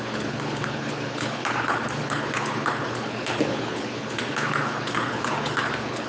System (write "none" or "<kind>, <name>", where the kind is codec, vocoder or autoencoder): codec, HILCodec